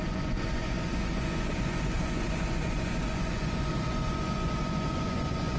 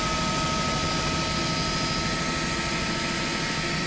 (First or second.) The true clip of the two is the second